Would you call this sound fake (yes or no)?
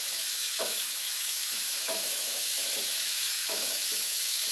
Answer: yes